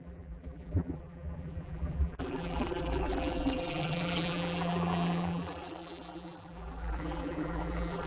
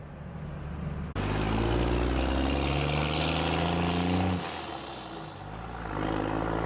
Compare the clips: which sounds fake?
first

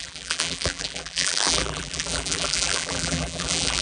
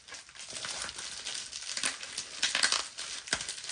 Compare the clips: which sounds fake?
first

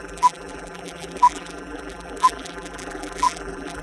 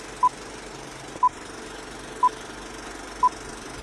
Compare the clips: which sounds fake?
first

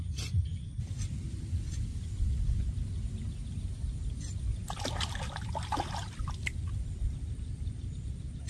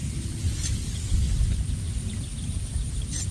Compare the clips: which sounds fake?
second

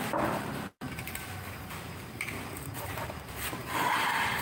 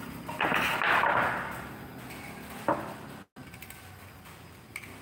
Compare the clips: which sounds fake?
first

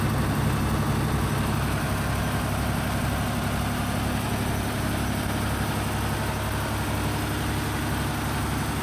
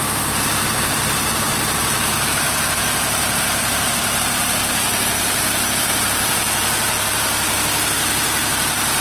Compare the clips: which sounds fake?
second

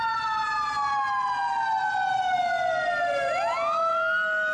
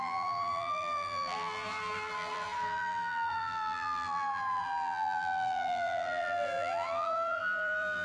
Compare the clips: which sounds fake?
second